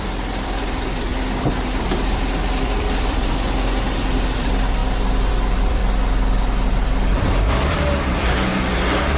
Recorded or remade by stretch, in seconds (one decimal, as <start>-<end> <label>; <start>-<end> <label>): 0.0-4.8 remade; 4.8-5.3 recorded; 5.3-5.8 remade; 5.8-6.7 recorded; 6.7-8.5 remade; 8.5-9.2 recorded